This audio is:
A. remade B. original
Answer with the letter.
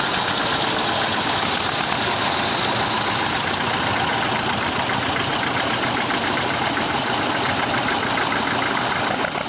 B